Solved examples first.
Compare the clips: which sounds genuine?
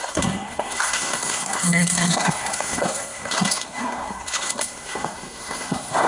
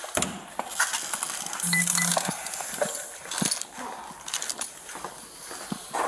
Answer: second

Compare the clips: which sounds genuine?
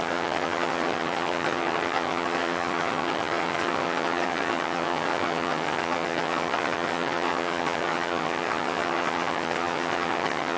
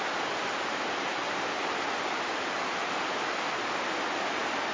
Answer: second